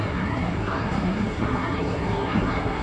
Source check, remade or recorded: remade